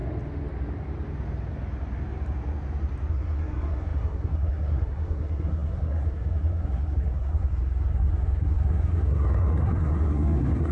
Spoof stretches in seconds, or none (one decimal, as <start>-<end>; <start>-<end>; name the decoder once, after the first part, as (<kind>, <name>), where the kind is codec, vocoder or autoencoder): 3.1-10.7 (codec, SNAC)